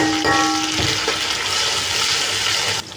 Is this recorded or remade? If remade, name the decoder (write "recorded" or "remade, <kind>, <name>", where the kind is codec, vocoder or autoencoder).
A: recorded